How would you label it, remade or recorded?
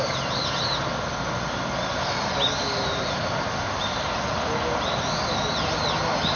recorded